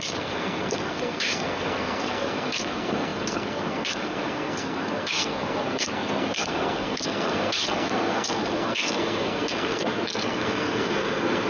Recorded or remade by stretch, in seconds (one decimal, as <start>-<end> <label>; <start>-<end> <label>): 0.0-11.5 remade